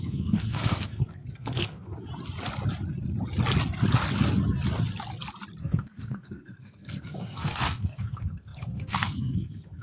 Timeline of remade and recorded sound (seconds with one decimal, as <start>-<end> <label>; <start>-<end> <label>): 0.0-1.9 remade; 1.9-5.6 recorded; 5.6-9.8 remade